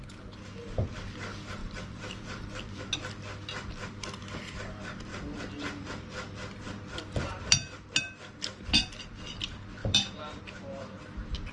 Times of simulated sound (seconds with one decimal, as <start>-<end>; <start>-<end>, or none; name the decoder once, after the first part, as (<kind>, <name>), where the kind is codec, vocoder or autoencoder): 1.6-2.8 (vocoder, BigVGAN v2); 9.8-10.4